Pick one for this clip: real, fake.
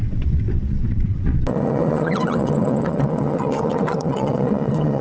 fake